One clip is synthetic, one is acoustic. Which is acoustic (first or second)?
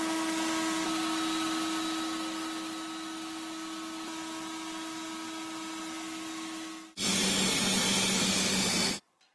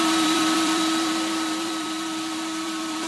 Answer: first